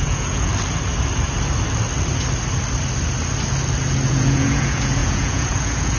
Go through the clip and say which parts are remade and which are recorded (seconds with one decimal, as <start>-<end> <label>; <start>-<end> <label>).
0.0-0.5 remade; 0.5-4.1 recorded; 4.1-6.0 remade